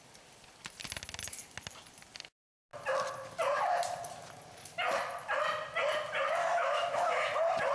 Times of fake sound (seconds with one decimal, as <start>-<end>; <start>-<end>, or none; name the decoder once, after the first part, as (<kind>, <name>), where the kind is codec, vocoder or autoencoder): 6.4-7.3 (autoencoder, DAC-VAE)